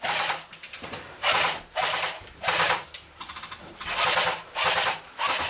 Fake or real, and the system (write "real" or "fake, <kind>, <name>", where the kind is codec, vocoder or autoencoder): fake, vocoder, BigVGAN v2